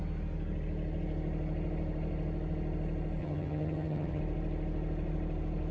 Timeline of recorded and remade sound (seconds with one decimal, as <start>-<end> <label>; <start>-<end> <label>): 0.0-3.2 recorded; 3.2-4.2 remade; 4.2-5.7 recorded